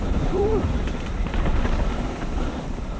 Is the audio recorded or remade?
remade